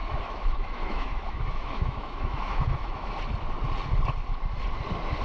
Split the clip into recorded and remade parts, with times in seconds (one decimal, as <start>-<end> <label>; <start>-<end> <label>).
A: 0.0-3.1 remade; 3.1-5.2 recorded